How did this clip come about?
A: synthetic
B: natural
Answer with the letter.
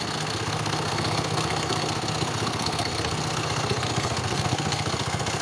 A